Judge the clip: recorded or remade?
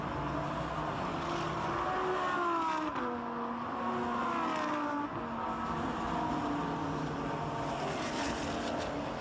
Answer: recorded